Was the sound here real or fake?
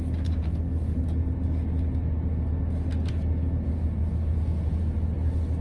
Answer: real